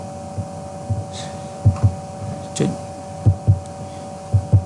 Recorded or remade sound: recorded